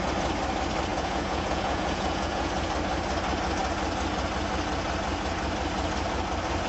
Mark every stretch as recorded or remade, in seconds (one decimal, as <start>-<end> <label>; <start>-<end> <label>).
0.0-0.9 recorded; 0.9-2.5 remade; 2.5-6.7 recorded